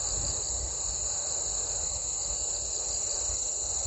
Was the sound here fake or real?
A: real